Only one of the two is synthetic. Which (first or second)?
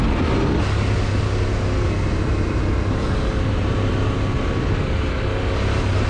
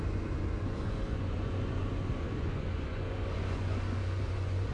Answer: second